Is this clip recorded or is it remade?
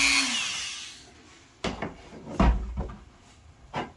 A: recorded